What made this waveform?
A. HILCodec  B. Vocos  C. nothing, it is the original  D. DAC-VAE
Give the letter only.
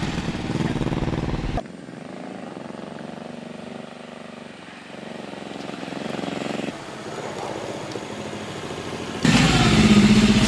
C